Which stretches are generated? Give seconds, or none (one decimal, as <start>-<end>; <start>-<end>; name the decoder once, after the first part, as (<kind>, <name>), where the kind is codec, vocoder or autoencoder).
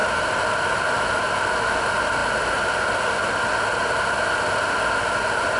none